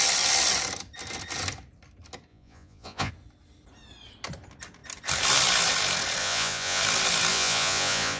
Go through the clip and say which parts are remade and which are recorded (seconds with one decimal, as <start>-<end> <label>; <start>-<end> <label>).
0.0-2.3 recorded; 2.3-3.1 remade; 3.1-6.2 recorded; 6.2-6.8 remade; 6.8-7.3 recorded; 7.3-8.2 remade